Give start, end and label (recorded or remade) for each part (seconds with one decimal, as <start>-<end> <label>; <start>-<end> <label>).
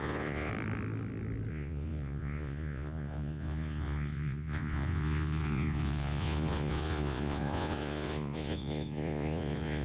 0.0-0.5 remade; 0.5-1.5 recorded; 1.5-9.8 remade